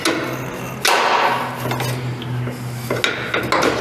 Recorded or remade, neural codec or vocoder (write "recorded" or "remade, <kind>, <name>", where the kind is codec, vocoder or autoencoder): recorded